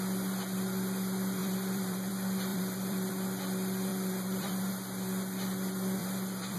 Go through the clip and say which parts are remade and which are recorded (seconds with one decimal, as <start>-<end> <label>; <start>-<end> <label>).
0.0-1.4 recorded; 1.4-2.1 remade; 2.1-2.5 recorded; 2.5-3.1 remade; 3.1-3.9 recorded; 3.9-4.7 remade; 4.7-6.0 recorded; 6.0-6.6 remade